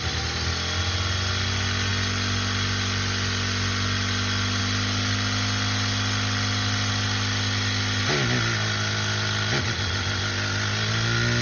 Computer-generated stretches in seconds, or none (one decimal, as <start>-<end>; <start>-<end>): none